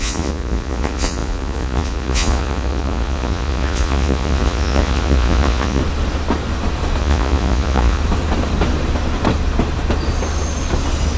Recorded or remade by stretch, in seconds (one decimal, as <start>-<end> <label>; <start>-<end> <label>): 0.0-5.8 remade; 5.8-7.0 recorded; 7.0-8.0 remade; 8.0-11.2 recorded